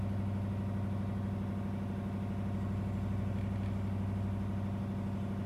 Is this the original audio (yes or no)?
yes